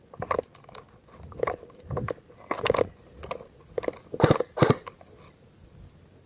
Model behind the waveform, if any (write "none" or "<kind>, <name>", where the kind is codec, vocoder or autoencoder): none